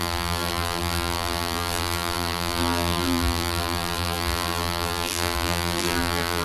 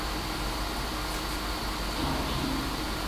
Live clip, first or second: second